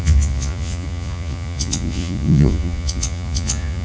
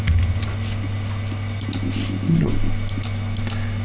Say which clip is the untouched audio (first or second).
second